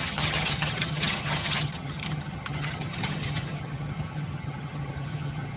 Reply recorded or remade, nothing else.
remade